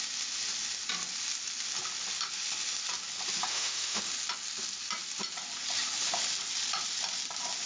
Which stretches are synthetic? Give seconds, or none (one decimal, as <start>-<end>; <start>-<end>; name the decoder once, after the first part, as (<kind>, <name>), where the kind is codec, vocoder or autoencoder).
3.5-4.0 (autoencoder, DAC-VAE)